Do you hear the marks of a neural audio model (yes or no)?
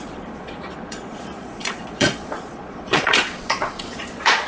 yes